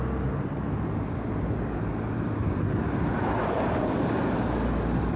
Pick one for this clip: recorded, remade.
remade